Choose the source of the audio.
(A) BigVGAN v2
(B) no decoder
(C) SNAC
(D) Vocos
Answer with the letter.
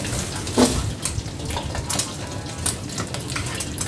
B